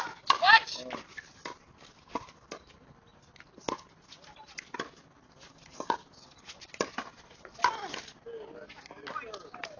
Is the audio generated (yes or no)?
no